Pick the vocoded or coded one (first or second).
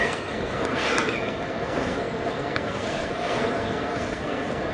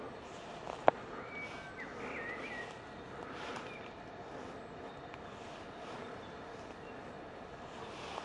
first